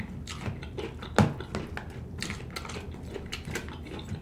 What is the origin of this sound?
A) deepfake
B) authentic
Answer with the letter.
B